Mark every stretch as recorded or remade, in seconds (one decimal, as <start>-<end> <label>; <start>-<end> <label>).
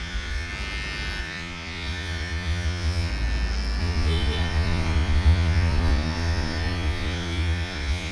0.0-0.5 remade; 0.5-1.2 recorded; 1.2-3.1 remade; 3.1-3.8 recorded; 3.8-8.1 remade